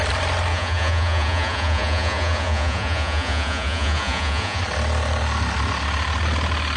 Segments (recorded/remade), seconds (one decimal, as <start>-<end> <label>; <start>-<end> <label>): 0.0-0.5 recorded; 0.5-4.6 remade; 4.6-6.8 recorded